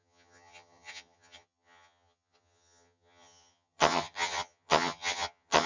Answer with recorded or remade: remade